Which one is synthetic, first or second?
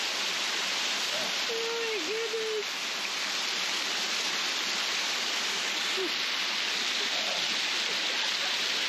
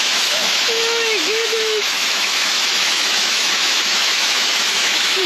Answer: second